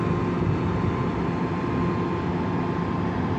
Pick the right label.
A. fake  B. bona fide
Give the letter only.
B